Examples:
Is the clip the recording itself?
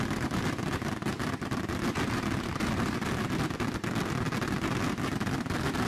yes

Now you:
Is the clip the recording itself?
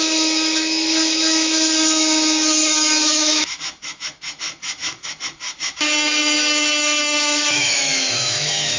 no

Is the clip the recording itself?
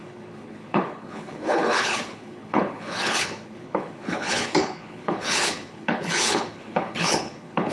no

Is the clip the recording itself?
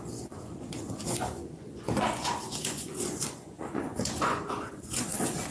no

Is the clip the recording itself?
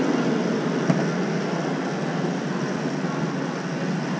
yes